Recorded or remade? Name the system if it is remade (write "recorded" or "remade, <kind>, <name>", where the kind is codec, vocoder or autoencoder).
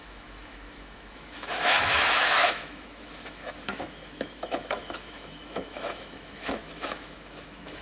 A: remade, autoencoder, DAC-VAE